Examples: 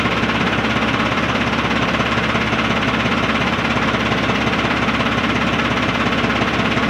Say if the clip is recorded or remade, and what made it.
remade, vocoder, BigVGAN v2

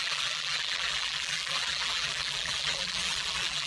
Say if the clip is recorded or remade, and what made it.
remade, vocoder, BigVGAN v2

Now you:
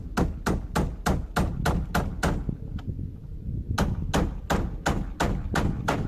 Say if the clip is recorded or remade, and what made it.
recorded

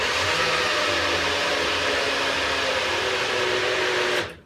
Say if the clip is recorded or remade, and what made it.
recorded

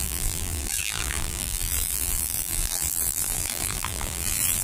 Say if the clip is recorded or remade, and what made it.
remade, vocoder, BigVGAN v2